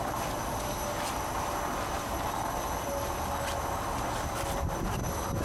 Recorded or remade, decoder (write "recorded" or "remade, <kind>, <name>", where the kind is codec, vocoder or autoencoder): recorded